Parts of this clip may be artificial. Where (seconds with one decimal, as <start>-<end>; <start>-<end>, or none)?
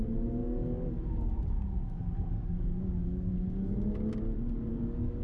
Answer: 0.0-3.3; 4.7-5.2